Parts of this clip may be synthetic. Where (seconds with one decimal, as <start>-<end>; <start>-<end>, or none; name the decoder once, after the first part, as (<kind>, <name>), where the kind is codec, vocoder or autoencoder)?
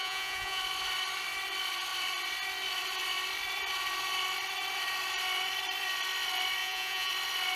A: 0.0-0.6 (vocoder, Vocos); 6.6-7.1